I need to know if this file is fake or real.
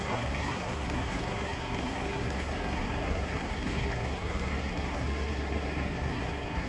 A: fake